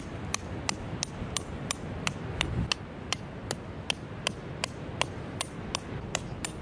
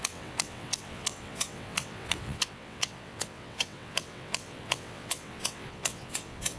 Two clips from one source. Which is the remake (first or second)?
second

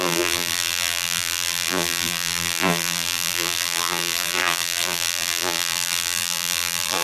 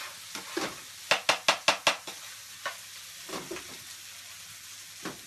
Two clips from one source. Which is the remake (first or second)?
first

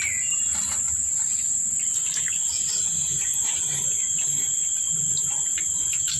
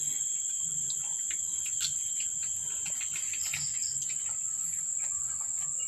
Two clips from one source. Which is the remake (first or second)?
first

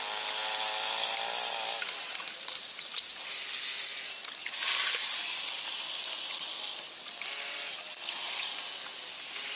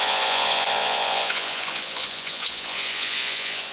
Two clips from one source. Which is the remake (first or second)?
second